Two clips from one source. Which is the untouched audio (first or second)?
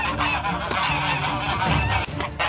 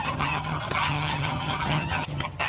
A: first